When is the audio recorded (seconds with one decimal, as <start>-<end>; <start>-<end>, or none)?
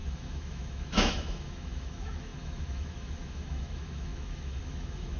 none